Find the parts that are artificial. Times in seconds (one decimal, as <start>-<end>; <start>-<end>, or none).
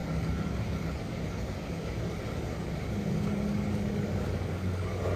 0.0-5.2